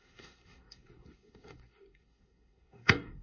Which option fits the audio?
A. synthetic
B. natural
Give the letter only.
A